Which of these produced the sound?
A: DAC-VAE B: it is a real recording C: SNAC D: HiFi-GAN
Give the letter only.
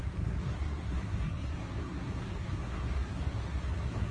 C